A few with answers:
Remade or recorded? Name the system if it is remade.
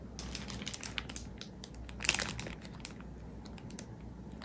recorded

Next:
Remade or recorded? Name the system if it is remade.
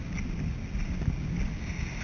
recorded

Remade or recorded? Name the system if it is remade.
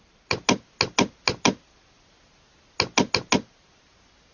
recorded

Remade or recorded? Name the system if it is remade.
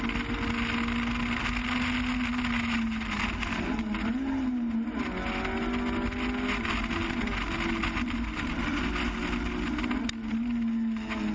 recorded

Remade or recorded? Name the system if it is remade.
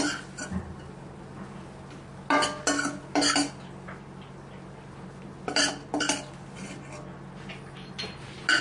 recorded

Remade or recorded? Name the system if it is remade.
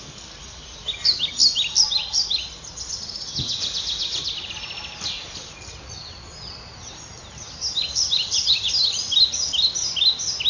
recorded